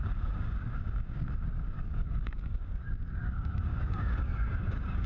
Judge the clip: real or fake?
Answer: fake